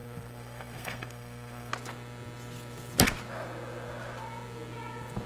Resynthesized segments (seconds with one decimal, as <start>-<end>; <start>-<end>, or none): 0.0-1.7